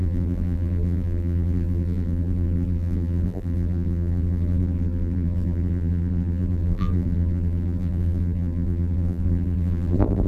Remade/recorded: remade